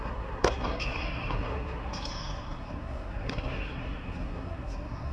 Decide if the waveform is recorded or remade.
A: remade